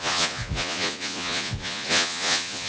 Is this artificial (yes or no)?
yes